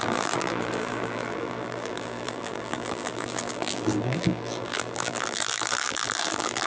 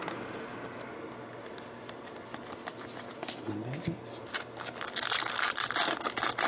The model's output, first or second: first